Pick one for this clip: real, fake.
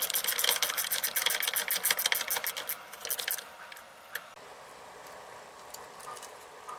real